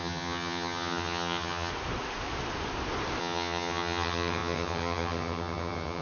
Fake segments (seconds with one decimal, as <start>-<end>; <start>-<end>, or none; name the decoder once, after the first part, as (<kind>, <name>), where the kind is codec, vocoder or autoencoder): 0.0-1.7 (vocoder, HiFi-GAN); 3.2-6.0